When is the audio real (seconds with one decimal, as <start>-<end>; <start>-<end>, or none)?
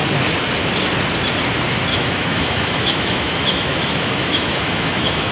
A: 0.0-1.9